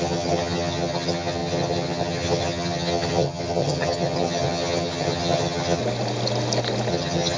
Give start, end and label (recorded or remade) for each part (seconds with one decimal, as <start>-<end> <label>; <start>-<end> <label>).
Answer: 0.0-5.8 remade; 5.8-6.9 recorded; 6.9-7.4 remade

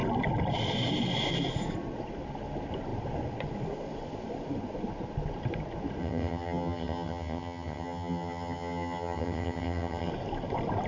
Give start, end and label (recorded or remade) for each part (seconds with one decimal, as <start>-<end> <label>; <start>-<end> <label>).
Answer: 0.0-6.0 recorded; 6.0-10.1 remade; 10.1-10.9 recorded

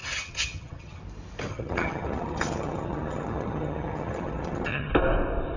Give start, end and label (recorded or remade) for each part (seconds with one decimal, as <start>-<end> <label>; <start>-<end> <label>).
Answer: 0.0-1.0 remade; 1.0-1.5 recorded; 1.5-4.9 remade; 4.9-5.6 recorded

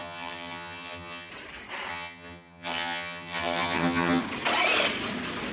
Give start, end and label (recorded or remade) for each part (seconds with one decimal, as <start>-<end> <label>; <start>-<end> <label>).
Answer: 0.0-1.3 remade; 1.3-1.9 recorded; 1.9-4.2 remade; 4.2-5.5 recorded

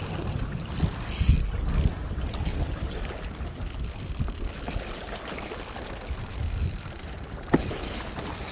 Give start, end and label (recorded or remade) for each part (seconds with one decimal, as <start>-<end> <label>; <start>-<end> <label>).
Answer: 0.0-8.5 recorded